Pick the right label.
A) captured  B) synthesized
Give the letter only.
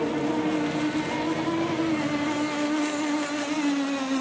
A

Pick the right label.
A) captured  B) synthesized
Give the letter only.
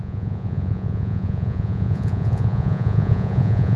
B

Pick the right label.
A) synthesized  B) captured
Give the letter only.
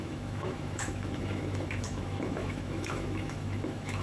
A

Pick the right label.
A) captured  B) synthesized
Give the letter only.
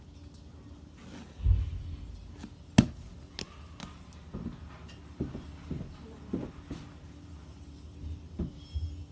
A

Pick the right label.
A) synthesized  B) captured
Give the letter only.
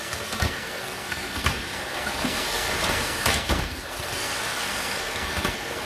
A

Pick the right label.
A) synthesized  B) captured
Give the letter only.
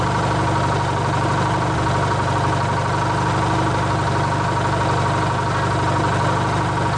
B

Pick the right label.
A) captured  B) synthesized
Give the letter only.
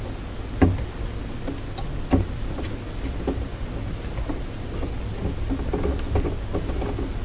A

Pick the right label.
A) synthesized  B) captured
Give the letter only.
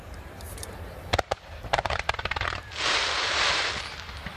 A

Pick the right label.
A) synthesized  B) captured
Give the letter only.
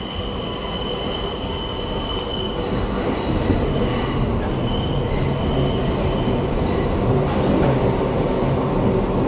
B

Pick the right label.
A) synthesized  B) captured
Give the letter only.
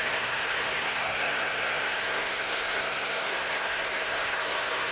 A